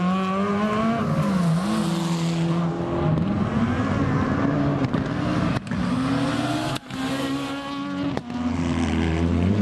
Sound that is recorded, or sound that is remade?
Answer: recorded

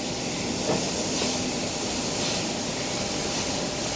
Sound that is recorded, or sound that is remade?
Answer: recorded